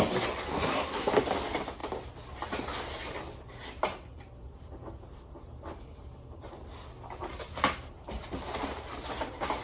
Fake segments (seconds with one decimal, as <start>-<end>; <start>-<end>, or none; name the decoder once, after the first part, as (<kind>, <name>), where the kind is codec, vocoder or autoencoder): 0.5-1.1 (codec, SNAC)